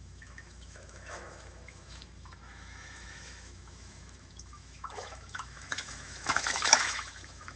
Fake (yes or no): yes